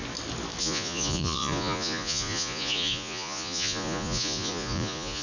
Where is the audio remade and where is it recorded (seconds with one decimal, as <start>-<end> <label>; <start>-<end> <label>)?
0.0-0.6 recorded; 0.6-5.2 remade